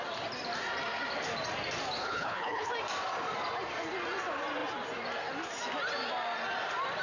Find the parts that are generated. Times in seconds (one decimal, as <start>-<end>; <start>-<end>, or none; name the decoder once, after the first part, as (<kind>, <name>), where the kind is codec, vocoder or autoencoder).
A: 2.0-2.7 (codec, HILCodec)